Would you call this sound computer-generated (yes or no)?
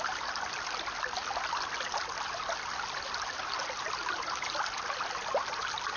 no